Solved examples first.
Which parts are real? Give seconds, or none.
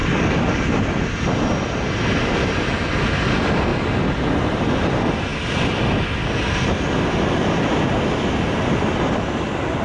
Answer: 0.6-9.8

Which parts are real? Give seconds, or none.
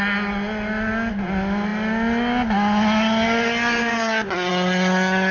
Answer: 0.0-5.3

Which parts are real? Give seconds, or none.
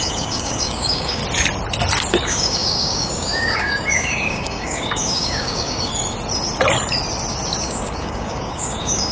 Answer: 1.2-2.2; 5.9-7.6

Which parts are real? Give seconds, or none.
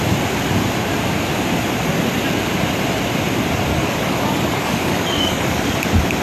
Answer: 0.0-3.7; 5.7-6.2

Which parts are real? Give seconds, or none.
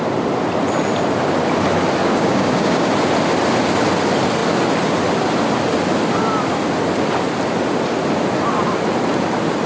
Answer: 0.0-2.0; 2.9-9.7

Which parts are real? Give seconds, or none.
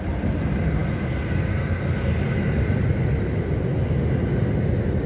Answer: 0.0-5.1